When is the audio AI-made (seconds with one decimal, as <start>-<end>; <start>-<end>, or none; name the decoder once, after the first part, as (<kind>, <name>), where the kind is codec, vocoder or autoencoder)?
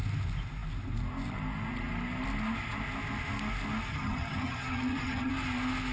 3.9-5.3 (vocoder, HiFi-GAN)